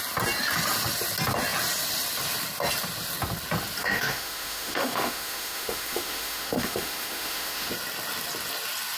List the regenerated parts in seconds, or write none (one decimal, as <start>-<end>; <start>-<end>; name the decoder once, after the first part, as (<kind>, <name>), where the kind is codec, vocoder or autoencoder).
3.8-7.7 (autoencoder, DAC-VAE)